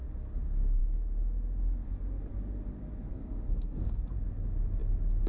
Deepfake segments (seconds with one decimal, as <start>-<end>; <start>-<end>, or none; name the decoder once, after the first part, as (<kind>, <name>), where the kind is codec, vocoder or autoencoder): 3.1-4.1 (codec, SNAC)